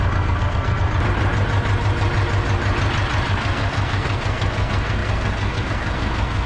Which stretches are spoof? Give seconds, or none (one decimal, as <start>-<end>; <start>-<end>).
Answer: 0.0-0.9; 3.3-6.5